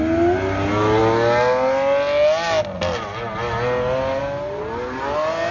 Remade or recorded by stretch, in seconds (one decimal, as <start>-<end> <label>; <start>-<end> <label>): 0.0-5.5 recorded